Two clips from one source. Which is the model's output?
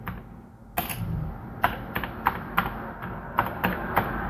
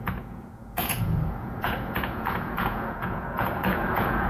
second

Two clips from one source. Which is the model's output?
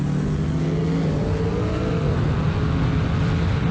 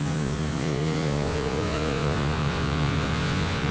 second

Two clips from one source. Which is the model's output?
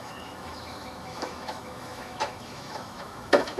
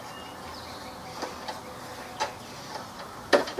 first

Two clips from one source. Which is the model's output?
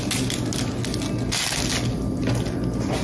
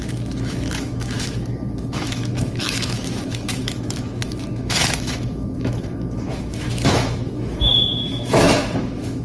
second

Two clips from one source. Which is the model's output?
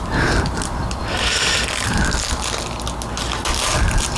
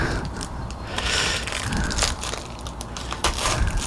second